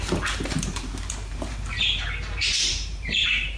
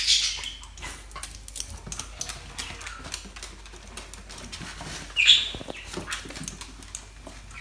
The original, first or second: second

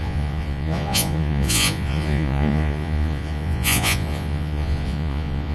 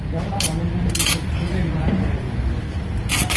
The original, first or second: second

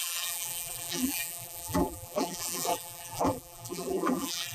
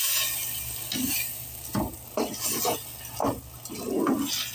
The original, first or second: second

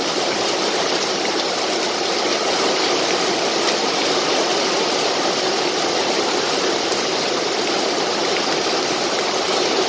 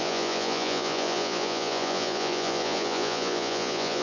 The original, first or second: first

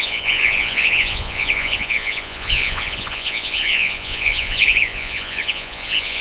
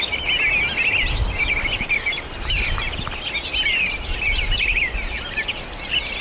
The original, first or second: second